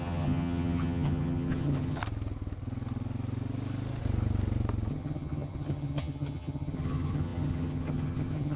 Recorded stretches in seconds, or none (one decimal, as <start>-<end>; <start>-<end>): 2.0-4.9